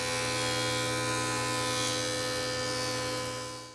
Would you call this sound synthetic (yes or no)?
no